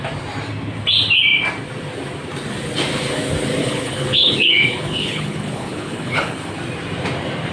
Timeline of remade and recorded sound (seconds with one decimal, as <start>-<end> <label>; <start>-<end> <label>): 0.0-3.6 recorded; 3.6-6.6 remade; 6.6-7.5 recorded